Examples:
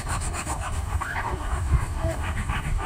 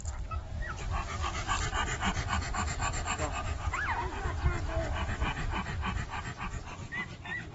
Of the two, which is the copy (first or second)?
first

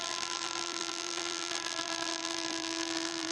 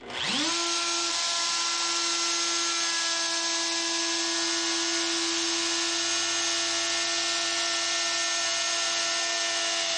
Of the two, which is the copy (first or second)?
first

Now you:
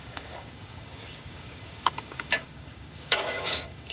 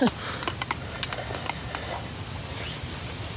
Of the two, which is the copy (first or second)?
first